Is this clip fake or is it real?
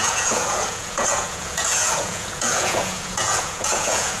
fake